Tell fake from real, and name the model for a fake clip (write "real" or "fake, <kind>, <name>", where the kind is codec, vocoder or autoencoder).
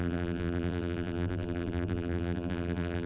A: fake, vocoder, BigVGAN v2